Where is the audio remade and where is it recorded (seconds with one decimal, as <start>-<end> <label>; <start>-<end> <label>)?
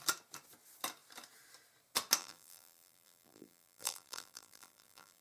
0.0-2.2 recorded; 2.2-5.2 remade